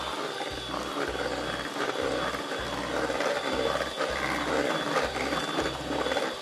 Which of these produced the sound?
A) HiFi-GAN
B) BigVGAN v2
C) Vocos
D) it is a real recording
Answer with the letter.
D